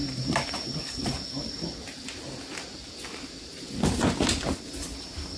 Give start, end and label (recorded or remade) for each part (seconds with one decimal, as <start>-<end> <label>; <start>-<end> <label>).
0.0-5.4 recorded